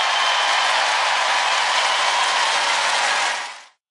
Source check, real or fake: fake